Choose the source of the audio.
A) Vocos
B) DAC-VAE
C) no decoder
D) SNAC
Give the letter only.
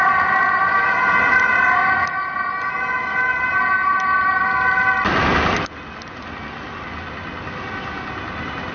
C